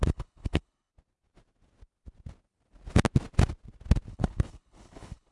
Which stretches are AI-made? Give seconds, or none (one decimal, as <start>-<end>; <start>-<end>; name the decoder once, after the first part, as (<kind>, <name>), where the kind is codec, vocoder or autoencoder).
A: 0.0-0.9 (codec, HILCodec); 4.1-5.3